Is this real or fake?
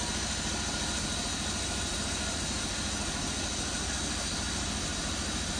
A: real